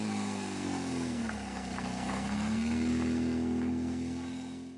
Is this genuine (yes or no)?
no